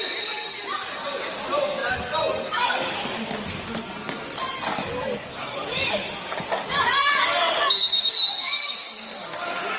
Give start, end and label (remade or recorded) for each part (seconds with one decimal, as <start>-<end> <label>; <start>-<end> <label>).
0.0-1.8 recorded; 1.8-3.8 remade; 3.8-4.7 recorded; 4.7-9.8 remade